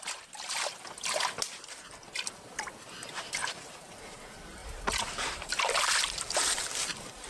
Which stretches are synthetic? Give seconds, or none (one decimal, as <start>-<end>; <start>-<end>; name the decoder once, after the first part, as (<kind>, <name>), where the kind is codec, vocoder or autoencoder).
4.6-5.8 (vocoder, BigVGAN v2)